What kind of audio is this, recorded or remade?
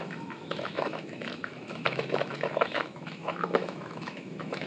remade